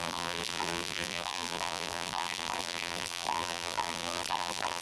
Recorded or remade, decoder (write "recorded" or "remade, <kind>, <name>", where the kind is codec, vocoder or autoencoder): remade, vocoder, BigVGAN v2